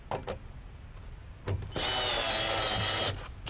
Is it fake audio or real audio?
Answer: real